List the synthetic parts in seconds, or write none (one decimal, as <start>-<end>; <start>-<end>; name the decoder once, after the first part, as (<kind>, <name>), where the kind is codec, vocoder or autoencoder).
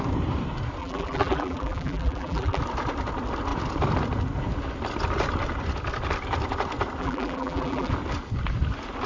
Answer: 0.8-2.6 (vocoder, BigVGAN v2); 7.0-7.9